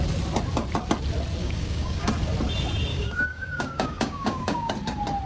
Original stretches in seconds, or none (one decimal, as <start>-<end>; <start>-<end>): 0.0-1.4; 2.1-2.9; 4.7-5.3